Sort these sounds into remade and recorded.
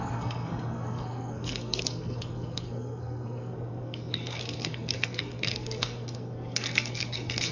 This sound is remade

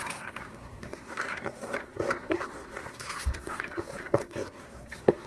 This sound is remade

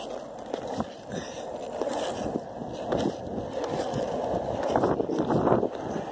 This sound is recorded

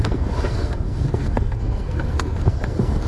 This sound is remade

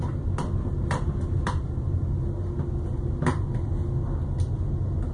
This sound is recorded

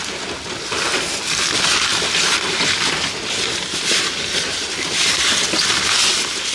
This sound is recorded